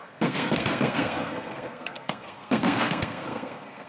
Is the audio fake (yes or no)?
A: yes